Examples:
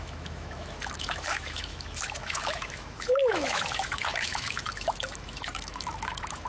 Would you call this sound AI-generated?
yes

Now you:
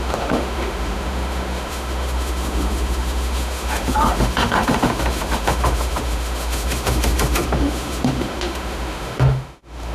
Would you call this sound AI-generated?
yes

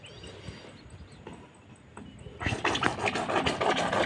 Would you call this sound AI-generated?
no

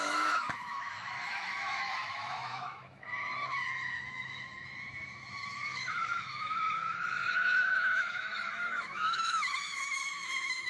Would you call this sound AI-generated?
yes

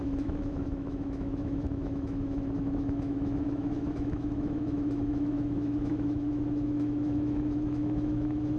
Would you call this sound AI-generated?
yes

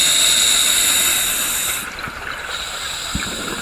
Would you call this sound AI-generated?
no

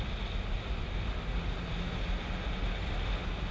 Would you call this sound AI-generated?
no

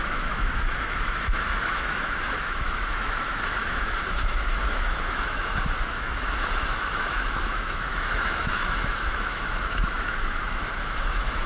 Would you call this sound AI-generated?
yes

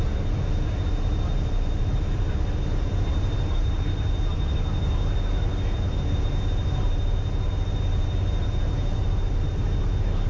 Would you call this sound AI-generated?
no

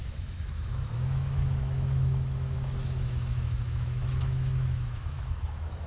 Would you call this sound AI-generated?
yes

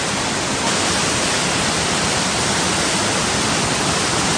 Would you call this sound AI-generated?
no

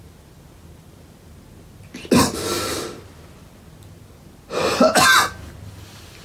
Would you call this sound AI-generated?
no